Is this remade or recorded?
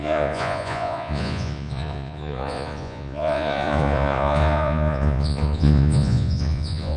remade